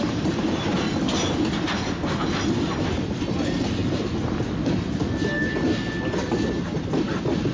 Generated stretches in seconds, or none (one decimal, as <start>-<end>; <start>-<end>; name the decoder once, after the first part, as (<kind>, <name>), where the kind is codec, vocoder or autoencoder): none